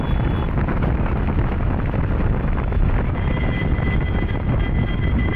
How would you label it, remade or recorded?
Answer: recorded